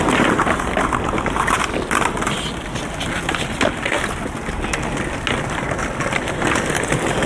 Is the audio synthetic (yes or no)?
no